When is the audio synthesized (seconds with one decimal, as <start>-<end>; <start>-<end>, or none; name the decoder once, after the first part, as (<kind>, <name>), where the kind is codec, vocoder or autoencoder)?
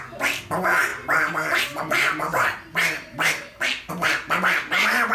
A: none